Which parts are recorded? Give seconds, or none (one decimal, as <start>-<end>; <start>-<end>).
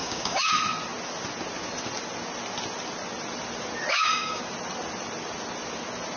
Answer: 0.5-3.9; 4.4-6.2